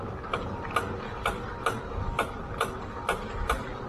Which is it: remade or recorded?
recorded